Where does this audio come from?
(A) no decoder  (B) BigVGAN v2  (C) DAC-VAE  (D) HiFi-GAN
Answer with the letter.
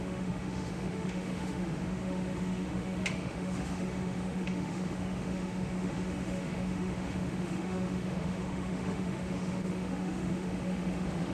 C